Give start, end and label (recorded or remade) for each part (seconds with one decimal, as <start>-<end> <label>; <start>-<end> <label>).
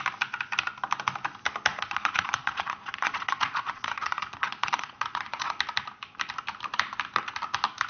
0.0-1.7 recorded; 1.7-5.6 remade; 5.6-7.9 recorded